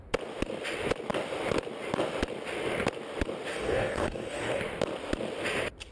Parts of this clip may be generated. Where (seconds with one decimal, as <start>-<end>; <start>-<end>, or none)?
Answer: 3.5-4.6